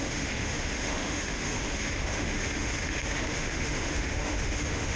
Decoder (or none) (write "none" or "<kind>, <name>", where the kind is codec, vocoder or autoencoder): autoencoder, DAC-VAE